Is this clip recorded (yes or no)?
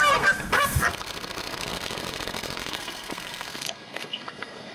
no